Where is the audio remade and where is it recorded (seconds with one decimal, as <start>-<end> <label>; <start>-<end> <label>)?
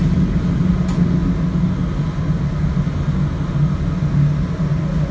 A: 0.0-5.1 recorded